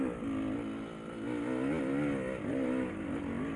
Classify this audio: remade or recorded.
recorded